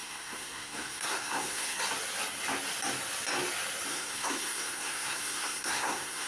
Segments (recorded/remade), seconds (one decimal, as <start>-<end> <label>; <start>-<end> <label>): 0.0-1.8 remade; 1.8-3.9 recorded; 3.9-6.3 remade

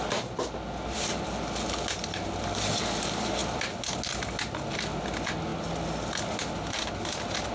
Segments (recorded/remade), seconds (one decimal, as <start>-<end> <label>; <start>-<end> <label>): 0.0-7.5 recorded

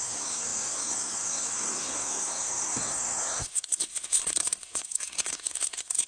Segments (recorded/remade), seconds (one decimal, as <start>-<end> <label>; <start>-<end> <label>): 0.0-6.1 remade

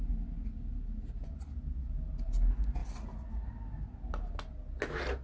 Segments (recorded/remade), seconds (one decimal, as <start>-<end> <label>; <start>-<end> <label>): 0.0-5.2 recorded

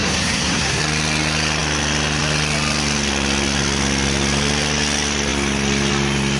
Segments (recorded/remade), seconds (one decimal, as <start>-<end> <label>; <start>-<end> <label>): 0.0-0.8 remade; 0.8-6.4 recorded

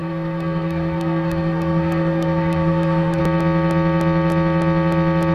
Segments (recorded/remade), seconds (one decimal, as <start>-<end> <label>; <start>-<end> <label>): 0.0-3.2 remade; 3.2-5.3 recorded

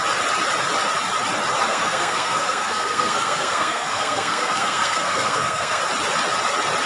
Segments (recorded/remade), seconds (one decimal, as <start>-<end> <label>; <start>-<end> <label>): 0.0-1.7 recorded; 1.7-5.8 remade; 5.8-6.9 recorded

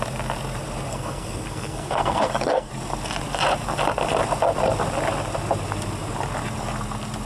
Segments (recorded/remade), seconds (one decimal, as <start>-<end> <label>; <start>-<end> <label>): 0.0-0.9 recorded; 0.9-2.7 remade; 2.7-7.3 recorded